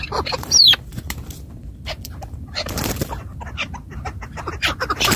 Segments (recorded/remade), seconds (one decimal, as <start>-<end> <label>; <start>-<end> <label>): 0.0-5.2 remade